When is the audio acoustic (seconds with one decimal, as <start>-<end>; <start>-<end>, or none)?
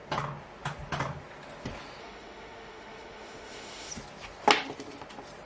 0.0-2.0; 3.9-5.5